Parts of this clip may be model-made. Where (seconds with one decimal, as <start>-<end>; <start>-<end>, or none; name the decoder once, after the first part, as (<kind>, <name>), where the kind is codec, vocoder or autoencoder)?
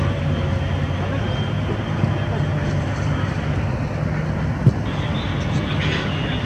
2.5-3.7 (vocoder, BigVGAN v2)